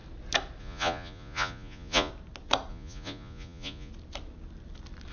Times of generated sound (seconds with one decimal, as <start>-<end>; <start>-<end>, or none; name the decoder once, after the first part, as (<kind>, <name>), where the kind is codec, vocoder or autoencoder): 0.6-2.1 (vocoder, Vocos); 2.7-3.9